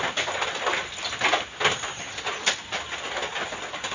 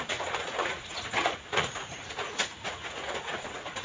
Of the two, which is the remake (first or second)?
second